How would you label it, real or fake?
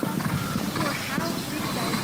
real